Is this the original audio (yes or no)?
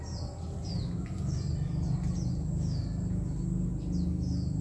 yes